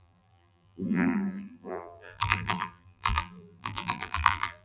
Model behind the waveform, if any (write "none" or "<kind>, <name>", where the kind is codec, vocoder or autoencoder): vocoder, BigVGAN v2